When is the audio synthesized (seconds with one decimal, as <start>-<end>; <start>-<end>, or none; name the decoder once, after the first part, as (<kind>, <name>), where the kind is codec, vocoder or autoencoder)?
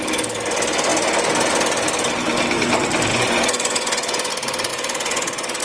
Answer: 3.1-4.3 (vocoder, Vocos); 4.7-5.6